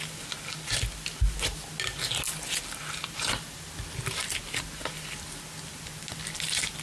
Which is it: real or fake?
real